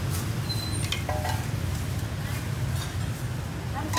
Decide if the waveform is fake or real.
real